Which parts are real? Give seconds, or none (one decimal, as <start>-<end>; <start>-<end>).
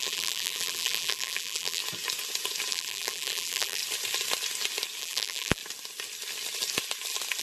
1.8-2.7; 3.8-5.0; 5.6-7.4